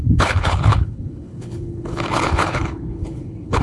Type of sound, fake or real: fake